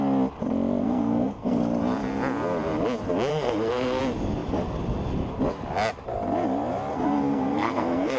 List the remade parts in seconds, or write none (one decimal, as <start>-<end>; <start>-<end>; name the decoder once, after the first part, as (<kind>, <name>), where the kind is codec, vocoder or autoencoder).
0.8-1.6 (codec, SNAC); 3.3-4.0; 6.9-8.2

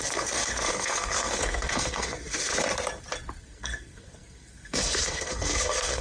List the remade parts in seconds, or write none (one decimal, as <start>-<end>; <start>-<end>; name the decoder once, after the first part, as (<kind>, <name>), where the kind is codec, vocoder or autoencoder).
0.0-2.5 (codec, SNAC); 3.4-6.0

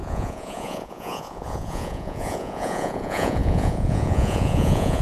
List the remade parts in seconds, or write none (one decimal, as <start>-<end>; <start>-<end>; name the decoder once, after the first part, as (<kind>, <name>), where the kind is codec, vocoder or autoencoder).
0.0-5.0 (vocoder, Vocos)